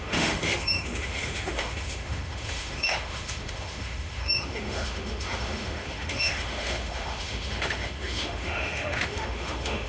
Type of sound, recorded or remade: remade